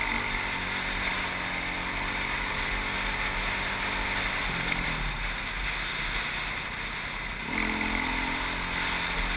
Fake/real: real